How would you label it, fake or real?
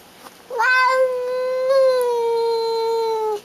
real